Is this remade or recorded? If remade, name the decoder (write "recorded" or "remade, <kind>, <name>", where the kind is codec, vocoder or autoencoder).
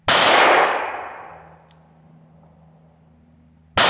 recorded